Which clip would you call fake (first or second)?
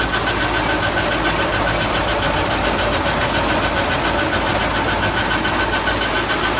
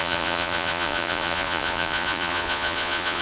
second